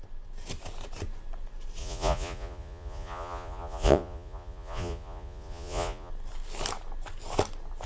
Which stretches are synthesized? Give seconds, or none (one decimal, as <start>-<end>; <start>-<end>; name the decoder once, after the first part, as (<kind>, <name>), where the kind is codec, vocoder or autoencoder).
1.8-6.1 (vocoder, Vocos)